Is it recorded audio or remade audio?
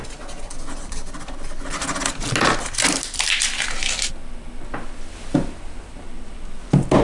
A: recorded